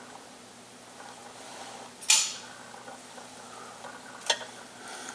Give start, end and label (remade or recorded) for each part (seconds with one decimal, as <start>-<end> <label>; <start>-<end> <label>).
0.0-5.1 recorded